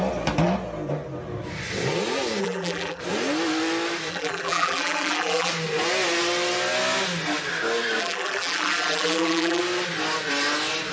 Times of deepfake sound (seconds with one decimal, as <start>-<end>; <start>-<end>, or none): 2.4-3.0; 4.1-5.5; 8.0-9.6